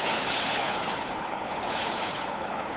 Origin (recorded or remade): remade